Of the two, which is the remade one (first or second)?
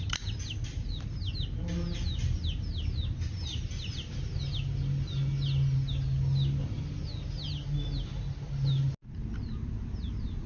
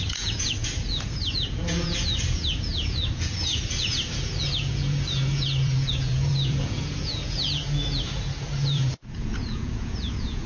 second